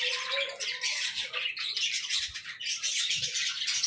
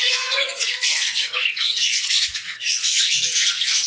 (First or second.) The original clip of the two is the first